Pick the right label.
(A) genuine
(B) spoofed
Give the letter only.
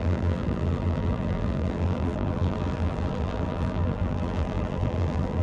B